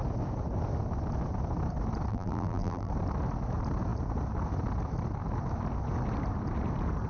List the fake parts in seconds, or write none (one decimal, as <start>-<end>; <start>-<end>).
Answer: 2.1-2.9